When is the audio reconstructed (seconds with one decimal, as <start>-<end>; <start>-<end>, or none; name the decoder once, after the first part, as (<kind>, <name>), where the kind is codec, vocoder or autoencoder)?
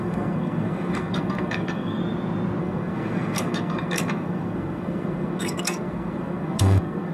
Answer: 0.0-2.0 (codec, SNAC); 2.6-7.1